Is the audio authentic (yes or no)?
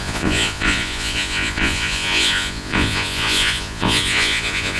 no